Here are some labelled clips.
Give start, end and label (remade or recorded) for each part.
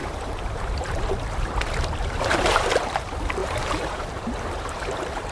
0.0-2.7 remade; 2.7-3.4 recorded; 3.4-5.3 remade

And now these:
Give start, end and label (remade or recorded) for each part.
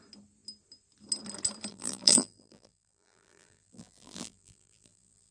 0.0-1.7 recorded; 1.7-5.3 remade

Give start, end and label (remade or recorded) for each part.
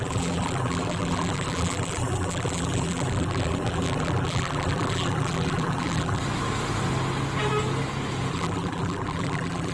0.0-6.2 remade; 6.2-8.3 recorded; 8.3-9.7 remade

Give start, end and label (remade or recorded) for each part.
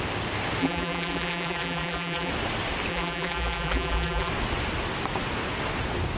0.0-0.6 recorded; 0.6-2.3 remade; 2.3-2.9 recorded; 2.9-4.3 remade; 4.3-6.2 recorded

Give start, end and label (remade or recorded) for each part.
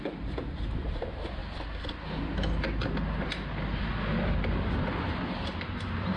0.0-1.4 remade; 1.4-5.1 recorded; 5.1-6.2 remade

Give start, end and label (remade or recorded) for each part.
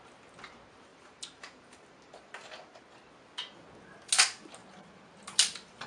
0.0-0.9 recorded; 0.9-2.8 remade; 2.8-5.9 recorded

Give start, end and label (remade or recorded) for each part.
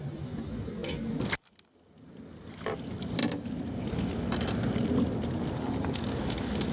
0.0-6.7 recorded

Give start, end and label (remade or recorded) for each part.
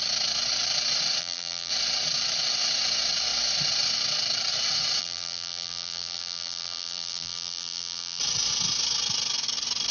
0.0-1.2 recorded; 1.2-1.7 remade; 1.7-5.0 recorded; 5.0-8.2 remade; 8.2-9.9 recorded